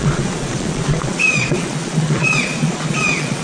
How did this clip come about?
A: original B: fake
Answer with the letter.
B